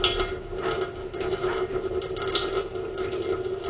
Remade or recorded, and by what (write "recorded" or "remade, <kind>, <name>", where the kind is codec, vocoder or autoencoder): recorded